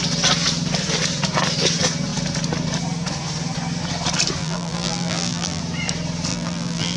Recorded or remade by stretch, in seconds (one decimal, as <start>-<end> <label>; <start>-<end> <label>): 0.0-4.4 recorded; 4.4-5.6 remade; 5.6-6.3 recorded; 6.3-7.0 remade